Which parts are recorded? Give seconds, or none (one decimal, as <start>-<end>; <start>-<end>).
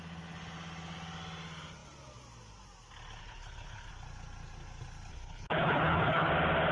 0.0-3.2; 3.9-5.1; 6.3-6.7